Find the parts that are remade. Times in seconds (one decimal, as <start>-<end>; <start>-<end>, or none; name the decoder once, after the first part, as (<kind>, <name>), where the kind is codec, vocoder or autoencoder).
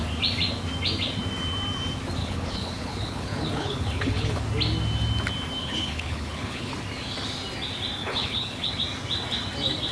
2.2-4.4 (codec, HILCodec); 5.6-6.7; 8.0-8.7